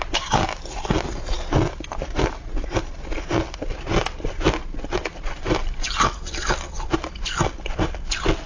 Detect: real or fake real